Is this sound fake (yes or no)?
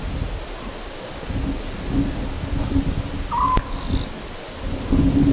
no